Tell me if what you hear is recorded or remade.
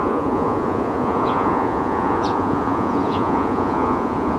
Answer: remade